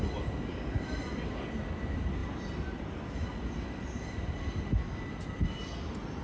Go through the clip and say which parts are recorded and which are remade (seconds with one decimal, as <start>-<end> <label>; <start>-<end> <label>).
0.0-6.2 recorded